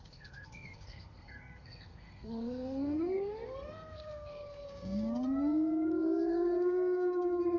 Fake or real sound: fake